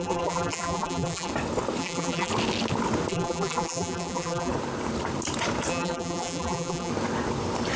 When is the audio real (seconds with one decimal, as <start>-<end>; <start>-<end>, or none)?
1.3-1.8; 2.3-3.1; 4.5-5.7; 6.9-7.8